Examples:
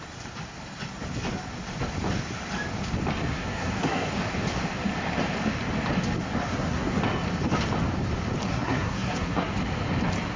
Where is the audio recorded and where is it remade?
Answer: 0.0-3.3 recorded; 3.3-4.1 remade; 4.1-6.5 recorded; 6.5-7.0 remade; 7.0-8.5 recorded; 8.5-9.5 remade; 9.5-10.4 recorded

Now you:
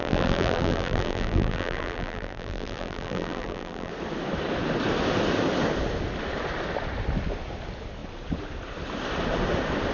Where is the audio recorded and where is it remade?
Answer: 0.0-3.9 remade; 3.9-9.9 recorded

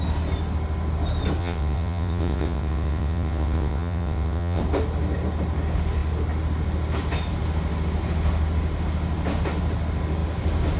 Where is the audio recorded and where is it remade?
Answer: 0.0-1.4 recorded; 1.4-4.6 remade; 4.6-10.8 recorded

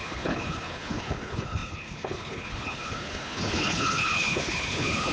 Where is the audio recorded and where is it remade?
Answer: 0.0-5.1 remade

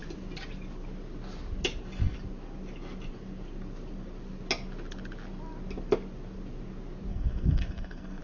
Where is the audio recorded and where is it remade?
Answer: 0.0-7.1 recorded; 7.1-8.2 remade